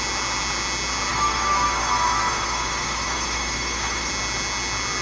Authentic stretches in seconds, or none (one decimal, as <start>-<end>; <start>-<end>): 0.0-1.1; 4.1-5.0